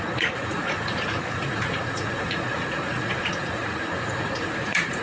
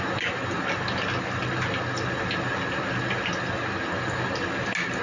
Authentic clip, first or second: second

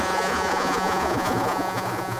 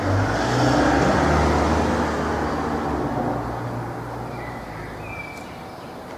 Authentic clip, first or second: second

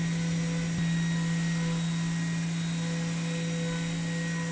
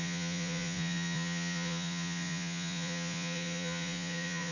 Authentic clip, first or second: first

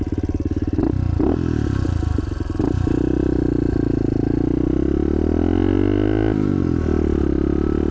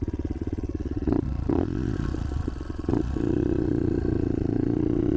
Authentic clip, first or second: first